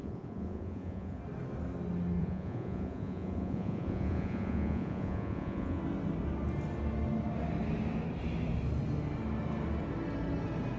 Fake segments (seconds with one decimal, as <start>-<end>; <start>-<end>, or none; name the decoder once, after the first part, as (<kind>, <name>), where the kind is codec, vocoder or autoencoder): 0.0-1.2 (vocoder, Vocos); 2.2-5.8